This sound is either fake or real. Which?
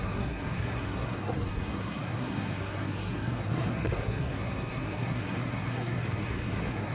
fake